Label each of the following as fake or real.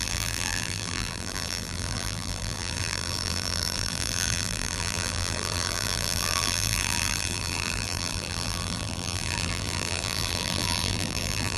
fake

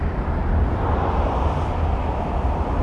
real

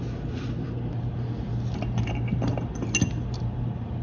real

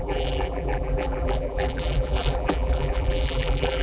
fake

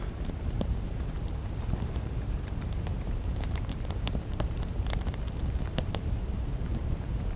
fake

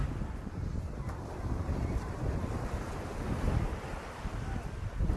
fake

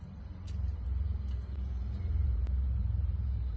fake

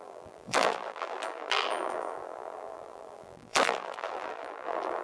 fake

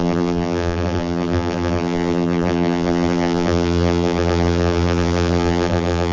fake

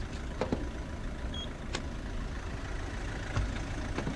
real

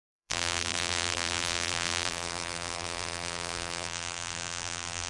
fake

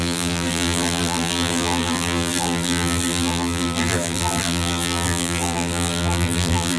fake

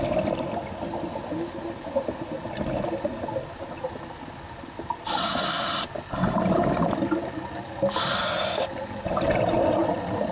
real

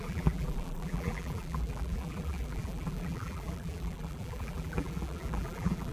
fake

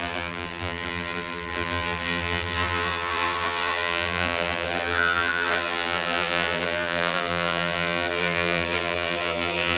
fake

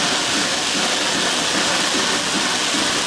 real